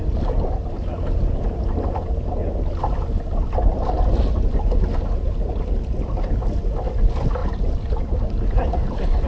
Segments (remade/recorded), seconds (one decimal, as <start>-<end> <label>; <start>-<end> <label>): 0.0-9.3 recorded